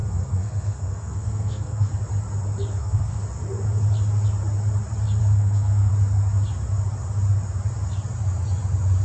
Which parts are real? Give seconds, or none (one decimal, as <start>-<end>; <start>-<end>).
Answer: 2.0-2.7; 3.2-5.2; 5.9-9.0